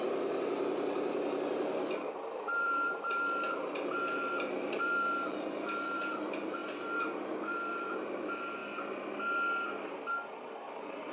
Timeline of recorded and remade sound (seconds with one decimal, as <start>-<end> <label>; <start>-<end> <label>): 0.0-8.6 remade; 8.6-10.6 recorded; 10.6-11.1 remade